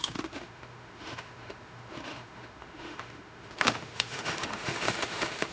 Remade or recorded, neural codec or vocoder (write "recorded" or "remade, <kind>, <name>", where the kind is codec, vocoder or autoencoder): remade, autoencoder, DAC-VAE